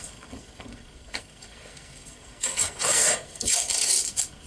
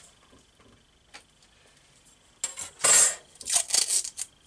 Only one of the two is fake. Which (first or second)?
first